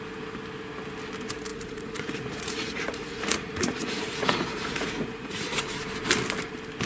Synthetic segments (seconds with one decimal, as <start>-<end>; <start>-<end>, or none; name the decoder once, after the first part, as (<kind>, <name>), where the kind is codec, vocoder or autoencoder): 1.5-5.6 (vocoder, Vocos)